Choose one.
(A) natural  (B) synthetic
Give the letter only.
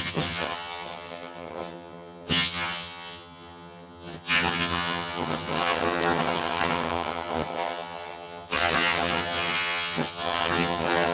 B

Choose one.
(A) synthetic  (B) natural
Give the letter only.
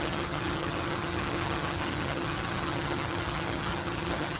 A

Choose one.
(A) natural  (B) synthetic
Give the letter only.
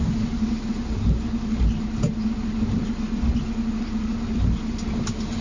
A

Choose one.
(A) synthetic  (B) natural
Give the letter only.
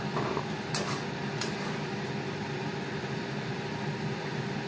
B